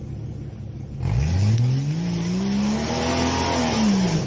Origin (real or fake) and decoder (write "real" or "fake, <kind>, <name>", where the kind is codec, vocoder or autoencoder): real